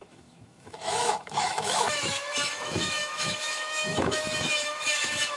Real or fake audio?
fake